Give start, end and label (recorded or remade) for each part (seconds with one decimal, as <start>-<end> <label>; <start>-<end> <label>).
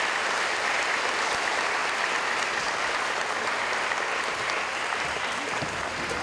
0.0-6.2 recorded